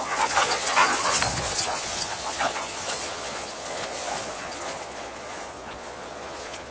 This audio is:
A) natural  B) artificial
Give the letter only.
B